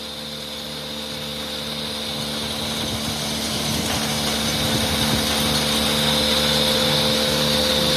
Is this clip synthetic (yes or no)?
no